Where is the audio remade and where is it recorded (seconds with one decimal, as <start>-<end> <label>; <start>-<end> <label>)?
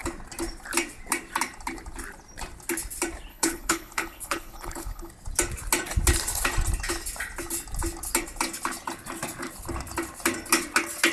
0.0-3.3 recorded; 3.3-5.1 remade; 5.1-11.1 recorded